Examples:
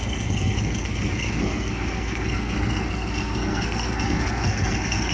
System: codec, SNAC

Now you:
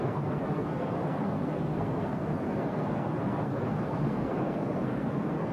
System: codec, SNAC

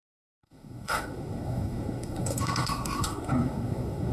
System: codec, SNAC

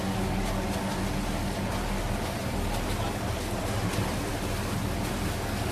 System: none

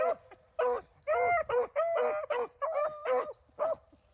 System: none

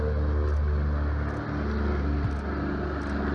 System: none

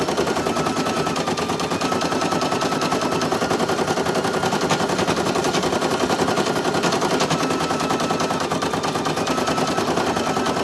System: none